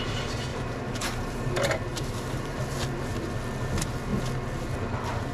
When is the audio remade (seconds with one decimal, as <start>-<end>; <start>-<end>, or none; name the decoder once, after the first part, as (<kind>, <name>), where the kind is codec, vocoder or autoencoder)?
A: 0.5-1.5 (vocoder, BigVGAN v2); 1.9-2.6

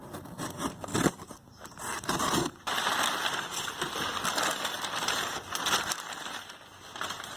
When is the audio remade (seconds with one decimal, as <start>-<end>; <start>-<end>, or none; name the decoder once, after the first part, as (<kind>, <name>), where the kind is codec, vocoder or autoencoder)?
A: 0.9-4.3 (vocoder, BigVGAN v2)

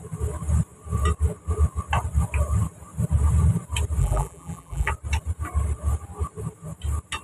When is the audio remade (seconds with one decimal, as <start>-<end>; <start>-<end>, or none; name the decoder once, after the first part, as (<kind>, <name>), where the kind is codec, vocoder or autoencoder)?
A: 4.0-4.9 (vocoder, BigVGAN v2)

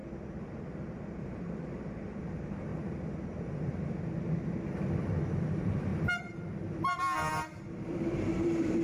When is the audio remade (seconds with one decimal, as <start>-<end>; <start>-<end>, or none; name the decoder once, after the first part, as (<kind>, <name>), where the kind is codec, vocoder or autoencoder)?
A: 1.2-2.7 (vocoder, BigVGAN v2); 5.5-5.9; 7.7-8.8

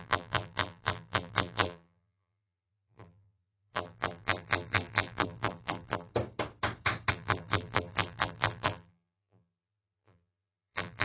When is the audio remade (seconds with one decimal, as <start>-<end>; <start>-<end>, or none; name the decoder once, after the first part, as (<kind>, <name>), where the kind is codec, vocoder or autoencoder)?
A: 0.0-6.1 (vocoder, BigVGAN v2); 7.1-11.0

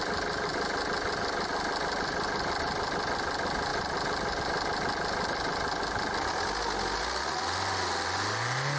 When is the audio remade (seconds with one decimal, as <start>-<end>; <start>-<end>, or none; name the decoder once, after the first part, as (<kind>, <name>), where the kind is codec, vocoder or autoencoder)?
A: none

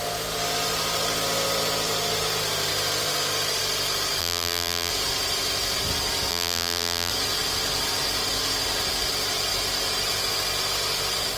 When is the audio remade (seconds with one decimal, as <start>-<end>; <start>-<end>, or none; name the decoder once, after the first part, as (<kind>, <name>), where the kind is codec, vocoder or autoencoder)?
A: 4.2-4.9 (vocoder, BigVGAN v2); 6.3-7.1